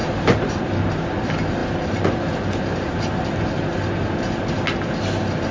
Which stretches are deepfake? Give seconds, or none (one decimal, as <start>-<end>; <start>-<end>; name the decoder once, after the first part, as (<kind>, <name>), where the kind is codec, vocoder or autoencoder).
0.0-0.6 (vocoder, BigVGAN v2); 1.6-2.1